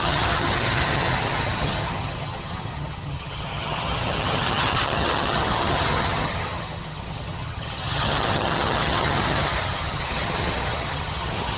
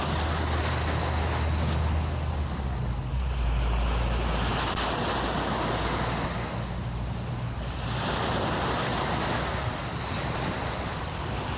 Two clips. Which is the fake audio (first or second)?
first